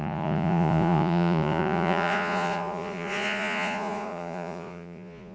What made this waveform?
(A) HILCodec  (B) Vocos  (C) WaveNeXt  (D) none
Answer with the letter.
B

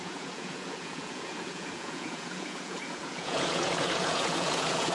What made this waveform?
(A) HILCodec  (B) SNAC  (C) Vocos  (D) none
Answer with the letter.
C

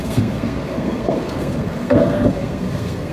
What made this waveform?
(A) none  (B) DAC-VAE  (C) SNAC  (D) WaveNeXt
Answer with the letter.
C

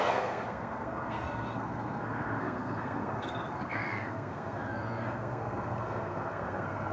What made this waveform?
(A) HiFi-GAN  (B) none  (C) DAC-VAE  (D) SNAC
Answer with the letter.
D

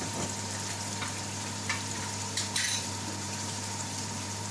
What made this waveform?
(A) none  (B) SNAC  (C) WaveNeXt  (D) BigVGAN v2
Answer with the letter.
D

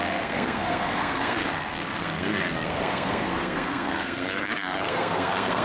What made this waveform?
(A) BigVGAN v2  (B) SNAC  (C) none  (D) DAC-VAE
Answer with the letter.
B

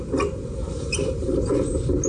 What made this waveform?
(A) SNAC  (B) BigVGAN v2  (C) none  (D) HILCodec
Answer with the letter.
C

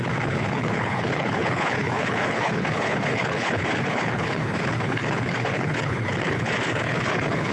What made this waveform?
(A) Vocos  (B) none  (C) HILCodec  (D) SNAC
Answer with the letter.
C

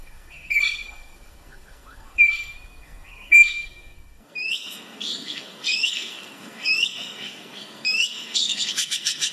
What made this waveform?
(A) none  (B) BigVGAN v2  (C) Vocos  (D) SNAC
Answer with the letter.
D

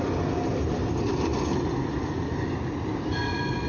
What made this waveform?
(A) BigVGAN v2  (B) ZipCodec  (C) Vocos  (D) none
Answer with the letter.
D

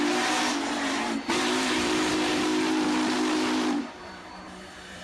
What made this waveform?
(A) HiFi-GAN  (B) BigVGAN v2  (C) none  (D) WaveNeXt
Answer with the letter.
B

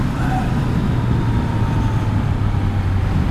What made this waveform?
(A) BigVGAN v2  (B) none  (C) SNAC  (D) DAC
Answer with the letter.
B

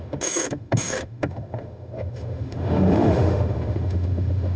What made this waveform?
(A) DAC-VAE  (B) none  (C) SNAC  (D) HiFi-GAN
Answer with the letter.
A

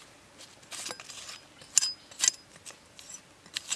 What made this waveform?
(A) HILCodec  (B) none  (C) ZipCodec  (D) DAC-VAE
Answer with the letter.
B